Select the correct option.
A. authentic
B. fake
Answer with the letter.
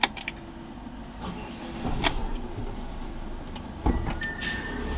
A